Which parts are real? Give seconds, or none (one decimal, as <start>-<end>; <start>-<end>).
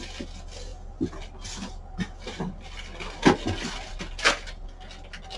0.0-5.4